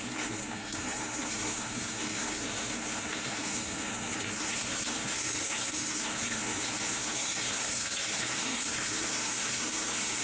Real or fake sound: fake